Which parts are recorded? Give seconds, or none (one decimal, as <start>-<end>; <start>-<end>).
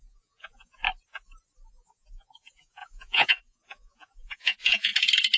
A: 0.8-1.7; 4.9-5.4